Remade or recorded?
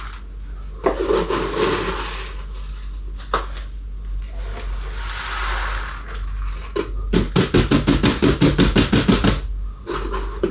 recorded